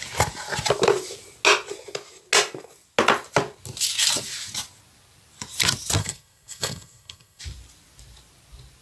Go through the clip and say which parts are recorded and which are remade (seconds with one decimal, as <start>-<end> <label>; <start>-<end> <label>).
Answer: 0.0-6.0 recorded; 6.0-7.4 remade; 7.4-8.8 recorded